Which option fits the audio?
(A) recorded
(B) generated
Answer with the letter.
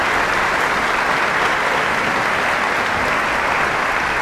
A